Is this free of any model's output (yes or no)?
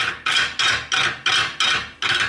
yes